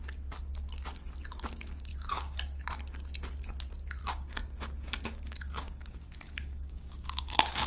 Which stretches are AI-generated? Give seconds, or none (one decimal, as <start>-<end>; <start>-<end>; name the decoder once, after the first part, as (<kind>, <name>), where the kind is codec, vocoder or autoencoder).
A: 1.9-2.4 (codec, DAC); 4.0-7.7